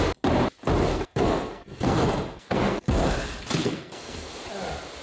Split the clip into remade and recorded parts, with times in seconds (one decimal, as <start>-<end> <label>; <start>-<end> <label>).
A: 0.0-0.9 recorded; 0.9-3.0 remade; 3.0-3.6 recorded; 3.6-4.3 remade; 4.3-5.0 recorded